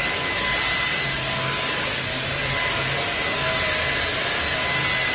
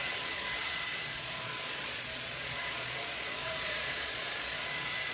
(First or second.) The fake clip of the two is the second